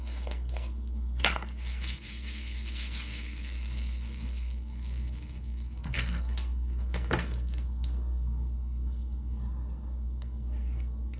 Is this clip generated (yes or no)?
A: yes